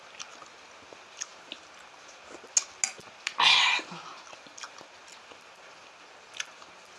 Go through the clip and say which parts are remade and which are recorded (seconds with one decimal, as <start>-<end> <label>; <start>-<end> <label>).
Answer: 0.0-7.0 recorded